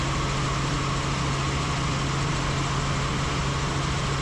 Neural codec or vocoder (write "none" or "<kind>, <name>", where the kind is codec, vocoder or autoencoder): none